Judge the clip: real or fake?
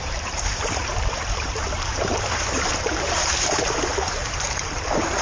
fake